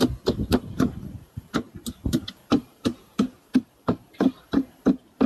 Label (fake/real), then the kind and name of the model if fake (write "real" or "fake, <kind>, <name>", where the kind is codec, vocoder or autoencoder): fake, vocoder, BigVGAN v2